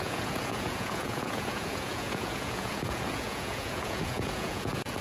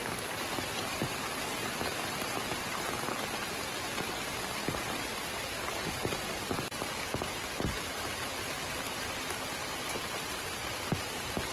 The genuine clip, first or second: second